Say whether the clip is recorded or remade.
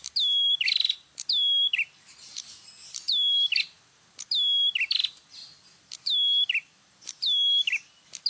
recorded